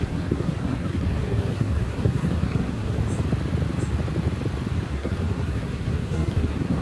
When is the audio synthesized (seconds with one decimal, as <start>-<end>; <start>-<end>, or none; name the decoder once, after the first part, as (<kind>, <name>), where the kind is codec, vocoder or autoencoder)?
0.0-3.0 (codec, SNAC); 4.8-6.8